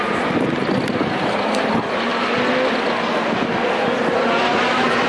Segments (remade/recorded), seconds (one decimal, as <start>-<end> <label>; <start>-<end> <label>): 0.0-5.1 recorded